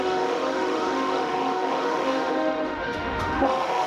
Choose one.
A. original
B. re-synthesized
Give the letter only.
B